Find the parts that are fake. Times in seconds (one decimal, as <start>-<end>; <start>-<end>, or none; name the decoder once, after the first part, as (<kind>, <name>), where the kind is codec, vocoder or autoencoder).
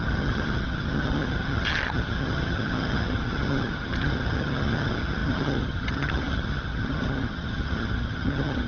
0.0-8.7 (vocoder, HiFi-GAN)